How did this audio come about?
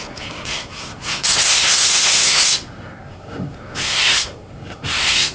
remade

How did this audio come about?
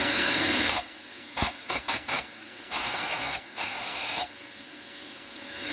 remade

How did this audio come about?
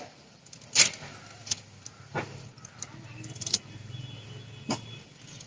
recorded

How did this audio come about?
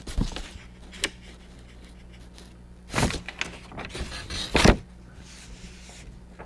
recorded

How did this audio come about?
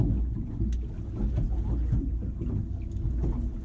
recorded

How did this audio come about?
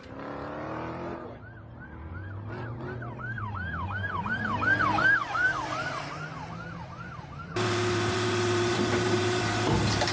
remade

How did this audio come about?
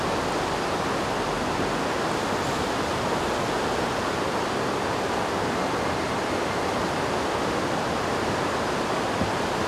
recorded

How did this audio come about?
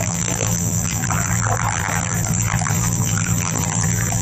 remade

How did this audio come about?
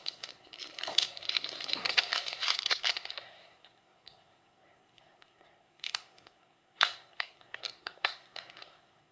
remade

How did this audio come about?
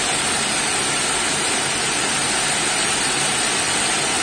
recorded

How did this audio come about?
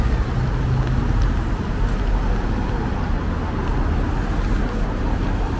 recorded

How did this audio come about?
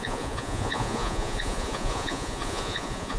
remade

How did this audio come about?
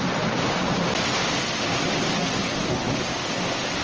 recorded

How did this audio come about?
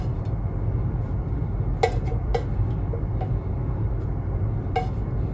recorded